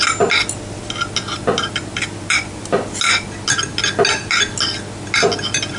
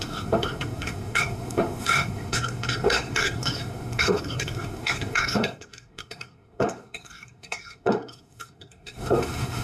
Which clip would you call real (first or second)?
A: first